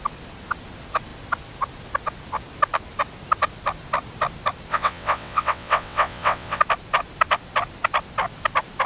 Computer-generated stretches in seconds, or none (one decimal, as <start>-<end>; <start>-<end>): 4.7-6.6